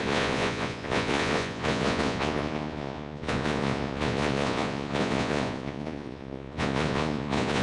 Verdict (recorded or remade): remade